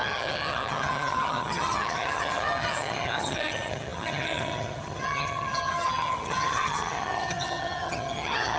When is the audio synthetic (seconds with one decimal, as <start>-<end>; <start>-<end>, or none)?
0.0-8.6